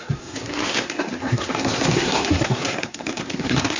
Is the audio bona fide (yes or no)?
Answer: no